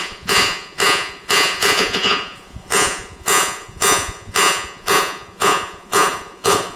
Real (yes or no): no